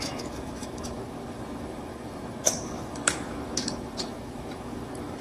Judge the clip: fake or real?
fake